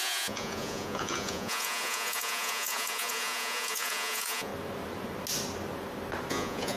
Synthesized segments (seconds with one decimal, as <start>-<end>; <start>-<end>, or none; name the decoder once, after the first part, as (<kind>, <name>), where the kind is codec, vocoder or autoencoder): 0.0-4.5 (vocoder, Vocos); 6.3-6.8